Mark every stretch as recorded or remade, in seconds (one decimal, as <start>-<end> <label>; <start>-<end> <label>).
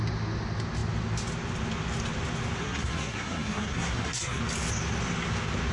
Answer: 0.0-2.6 recorded; 2.6-4.4 remade; 4.4-5.7 recorded